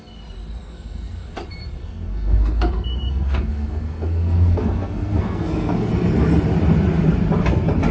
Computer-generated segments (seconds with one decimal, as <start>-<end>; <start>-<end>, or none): 0.6-1.3; 1.8-5.9